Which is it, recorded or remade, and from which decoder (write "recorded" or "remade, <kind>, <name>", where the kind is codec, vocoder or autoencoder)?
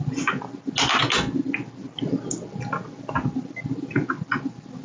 recorded